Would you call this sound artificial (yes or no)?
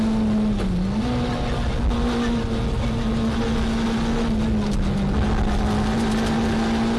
no